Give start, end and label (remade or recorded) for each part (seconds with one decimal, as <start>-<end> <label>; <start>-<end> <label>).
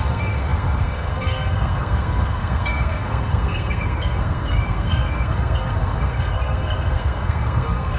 0.0-8.0 remade